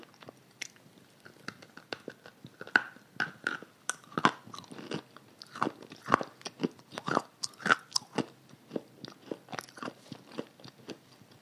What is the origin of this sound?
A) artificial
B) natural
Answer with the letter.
B